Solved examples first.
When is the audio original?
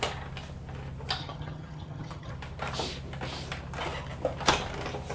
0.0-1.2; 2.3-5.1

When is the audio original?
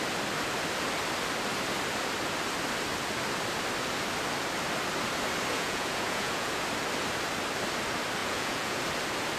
0.0-5.5; 6.5-8.2; 8.8-9.4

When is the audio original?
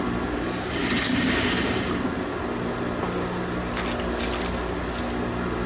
0.0-5.7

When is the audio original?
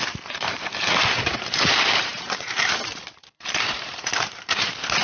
none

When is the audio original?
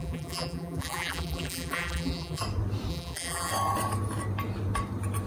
2.4-2.9; 3.5-5.3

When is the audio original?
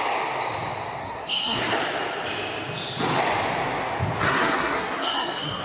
0.0-1.0; 1.7-4.2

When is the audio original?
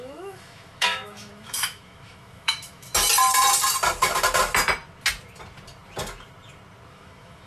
2.9-6.9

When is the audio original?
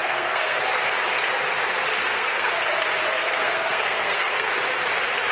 0.6-2.0; 2.5-3.2; 4.5-5.3